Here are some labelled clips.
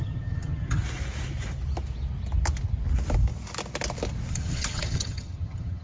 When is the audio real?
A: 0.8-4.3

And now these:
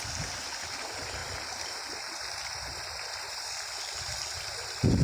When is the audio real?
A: 0.0-5.0

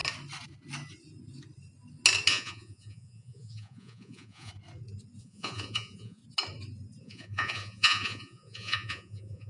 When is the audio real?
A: 0.0-2.3; 4.5-5.2; 6.2-7.0

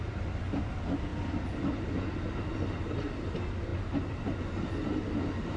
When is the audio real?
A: 0.0-5.6

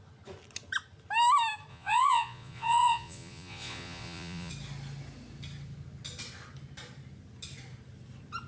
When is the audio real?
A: 0.0-1.7; 4.5-8.5

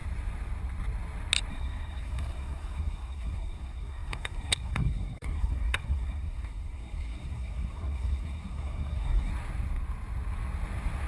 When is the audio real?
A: 0.0-1.5; 9.3-11.1

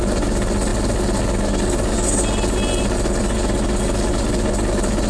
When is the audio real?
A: 0.0-5.1

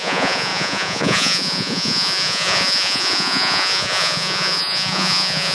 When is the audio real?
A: none